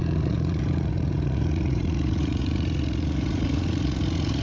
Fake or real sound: fake